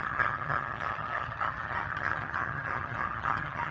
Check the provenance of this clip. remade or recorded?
remade